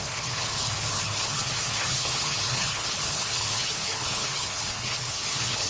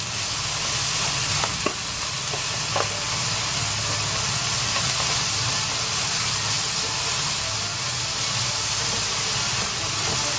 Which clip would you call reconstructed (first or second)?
first